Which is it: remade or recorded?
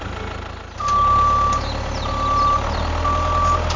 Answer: recorded